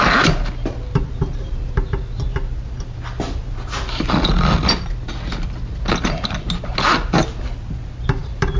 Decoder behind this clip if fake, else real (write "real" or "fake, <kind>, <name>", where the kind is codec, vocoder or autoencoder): real